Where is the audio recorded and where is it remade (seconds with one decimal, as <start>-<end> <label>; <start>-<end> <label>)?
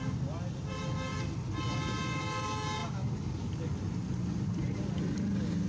0.0-5.7 recorded